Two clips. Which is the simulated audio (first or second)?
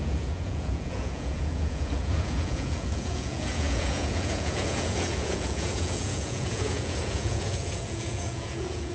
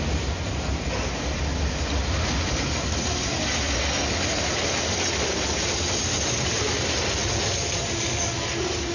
first